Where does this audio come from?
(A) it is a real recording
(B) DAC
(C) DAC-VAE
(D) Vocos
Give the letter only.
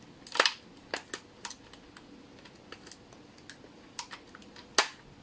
A